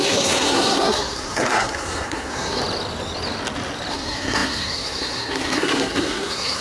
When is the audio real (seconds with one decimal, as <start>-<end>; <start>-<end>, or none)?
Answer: 2.6-3.9

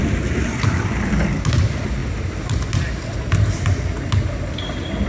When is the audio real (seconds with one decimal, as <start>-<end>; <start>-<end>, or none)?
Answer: 0.0-5.1